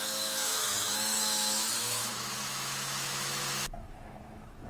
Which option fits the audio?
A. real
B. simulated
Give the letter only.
B